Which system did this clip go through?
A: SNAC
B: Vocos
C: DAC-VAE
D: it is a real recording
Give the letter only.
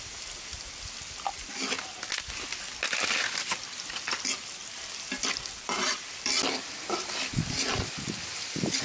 D